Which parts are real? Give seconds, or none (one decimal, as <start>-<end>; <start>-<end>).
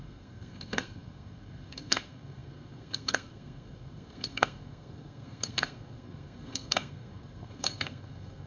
none